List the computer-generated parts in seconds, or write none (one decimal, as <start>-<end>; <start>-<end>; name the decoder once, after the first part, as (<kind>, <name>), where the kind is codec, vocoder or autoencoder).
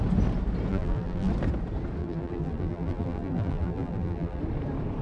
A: 0.7-1.3 (vocoder, BigVGAN v2); 2.0-4.4